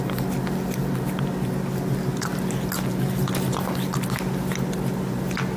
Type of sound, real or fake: real